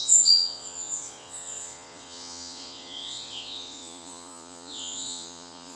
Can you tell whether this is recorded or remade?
remade